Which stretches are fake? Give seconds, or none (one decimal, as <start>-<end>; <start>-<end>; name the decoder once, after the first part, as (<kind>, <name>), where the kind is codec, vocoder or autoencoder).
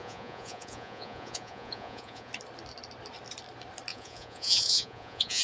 0.0-2.3 (vocoder, Vocos); 3.9-5.4